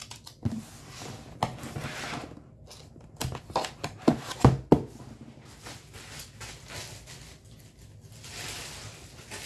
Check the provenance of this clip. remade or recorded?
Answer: recorded